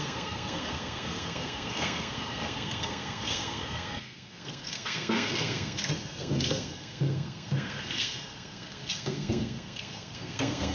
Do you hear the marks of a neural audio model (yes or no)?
yes